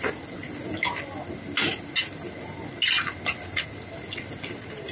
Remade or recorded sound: recorded